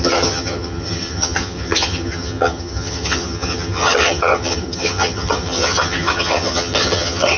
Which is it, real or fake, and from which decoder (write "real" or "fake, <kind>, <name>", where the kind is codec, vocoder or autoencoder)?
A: fake, vocoder, HiFi-GAN